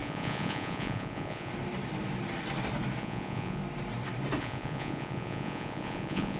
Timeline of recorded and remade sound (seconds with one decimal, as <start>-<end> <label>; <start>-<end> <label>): 0.0-1.5 remade; 1.5-3.0 recorded; 3.0-3.6 remade; 3.6-4.4 recorded; 4.4-6.4 remade